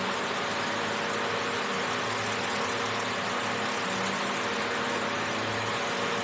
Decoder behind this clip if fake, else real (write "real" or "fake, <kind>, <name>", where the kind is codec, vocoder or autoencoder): real